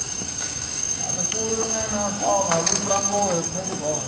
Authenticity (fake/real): fake